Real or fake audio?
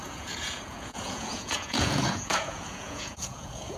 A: fake